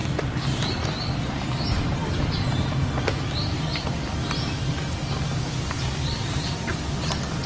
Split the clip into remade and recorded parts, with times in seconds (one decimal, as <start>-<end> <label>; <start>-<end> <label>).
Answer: 0.0-7.5 recorded